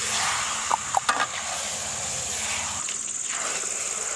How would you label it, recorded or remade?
recorded